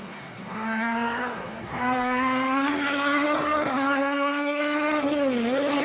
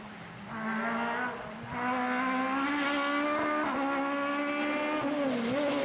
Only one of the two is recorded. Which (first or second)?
second